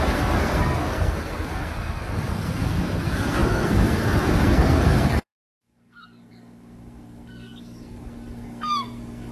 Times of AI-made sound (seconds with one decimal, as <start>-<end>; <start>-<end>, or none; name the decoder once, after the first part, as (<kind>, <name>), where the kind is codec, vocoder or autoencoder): 0.0-9.3 (codec, SNAC)